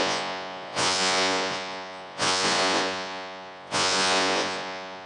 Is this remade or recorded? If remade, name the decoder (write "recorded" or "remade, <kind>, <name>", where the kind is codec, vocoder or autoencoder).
remade, vocoder, Vocos